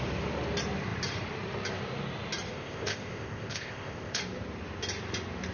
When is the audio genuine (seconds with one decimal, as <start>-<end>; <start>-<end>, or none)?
0.0-2.5; 4.2-5.5